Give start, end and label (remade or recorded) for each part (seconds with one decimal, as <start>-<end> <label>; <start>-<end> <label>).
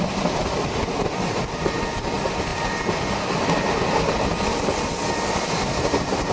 0.0-6.3 recorded